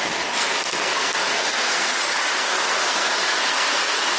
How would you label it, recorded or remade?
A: remade